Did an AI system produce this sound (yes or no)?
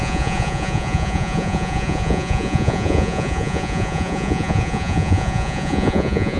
yes